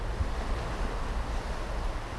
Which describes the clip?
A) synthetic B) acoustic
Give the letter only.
B